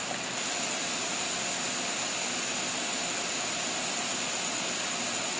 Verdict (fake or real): real